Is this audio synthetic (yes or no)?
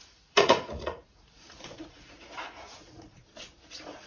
yes